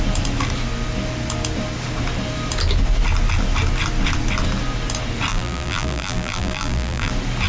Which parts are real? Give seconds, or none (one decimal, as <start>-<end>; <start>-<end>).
0.0-5.3; 7.1-7.5